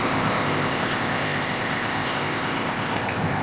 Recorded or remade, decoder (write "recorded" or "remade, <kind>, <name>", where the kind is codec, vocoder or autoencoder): remade, codec, ZipCodec